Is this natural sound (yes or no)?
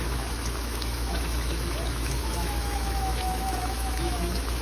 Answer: no